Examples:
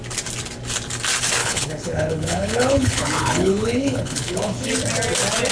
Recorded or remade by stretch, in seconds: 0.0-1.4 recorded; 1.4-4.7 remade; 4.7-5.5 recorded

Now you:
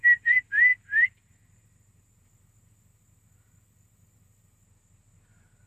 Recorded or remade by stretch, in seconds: 0.0-5.7 recorded